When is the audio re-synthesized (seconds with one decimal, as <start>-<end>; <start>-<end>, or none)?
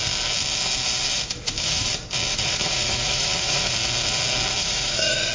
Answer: 1.1-1.9; 2.3-3.7; 4.5-5.3